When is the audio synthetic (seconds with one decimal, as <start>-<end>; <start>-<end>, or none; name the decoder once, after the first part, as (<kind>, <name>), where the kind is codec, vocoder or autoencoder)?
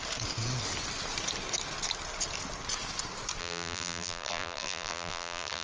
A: 3.4-5.6 (vocoder, BigVGAN v2)